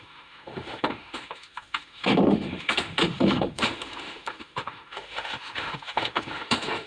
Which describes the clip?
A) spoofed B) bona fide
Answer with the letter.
A